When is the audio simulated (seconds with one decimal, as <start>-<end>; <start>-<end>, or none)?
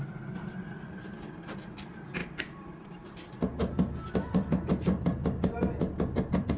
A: 2.2-3.1